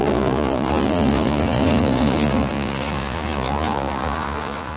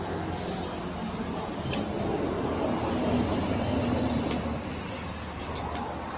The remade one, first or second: first